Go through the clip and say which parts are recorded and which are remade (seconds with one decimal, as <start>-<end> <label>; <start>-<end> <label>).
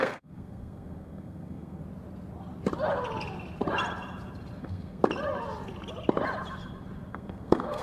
0.0-1.8 remade; 1.8-4.6 recorded; 4.6-5.0 remade; 5.0-7.1 recorded; 7.1-7.8 remade